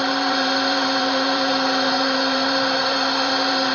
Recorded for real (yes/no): no